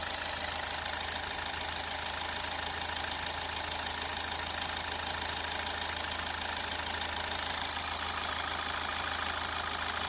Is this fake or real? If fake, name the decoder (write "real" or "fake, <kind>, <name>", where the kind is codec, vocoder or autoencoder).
real